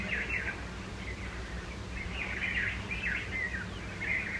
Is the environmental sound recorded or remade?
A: recorded